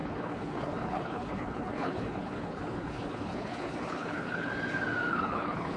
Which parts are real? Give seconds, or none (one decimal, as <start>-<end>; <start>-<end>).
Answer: 4.5-5.1